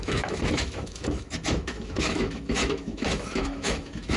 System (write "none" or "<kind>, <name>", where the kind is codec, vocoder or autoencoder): autoencoder, DAC-VAE